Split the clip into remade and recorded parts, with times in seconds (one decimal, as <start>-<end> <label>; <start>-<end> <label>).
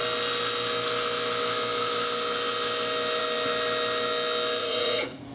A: 0.0-4.6 recorded; 4.6-5.3 remade